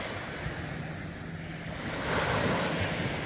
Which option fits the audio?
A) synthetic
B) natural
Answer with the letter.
B